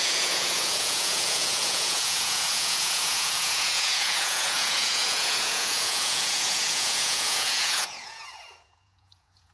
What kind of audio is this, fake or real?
fake